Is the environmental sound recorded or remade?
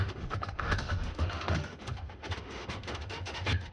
remade